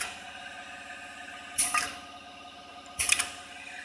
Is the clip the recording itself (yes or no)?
yes